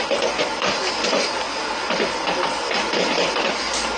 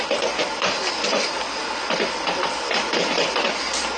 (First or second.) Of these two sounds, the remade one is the second